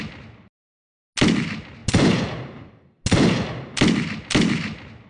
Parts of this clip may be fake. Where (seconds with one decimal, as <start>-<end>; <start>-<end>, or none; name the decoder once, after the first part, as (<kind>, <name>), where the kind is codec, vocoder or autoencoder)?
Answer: none